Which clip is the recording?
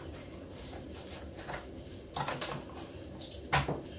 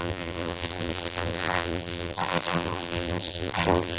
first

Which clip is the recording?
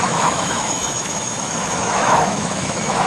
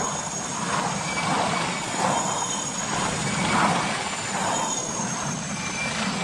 second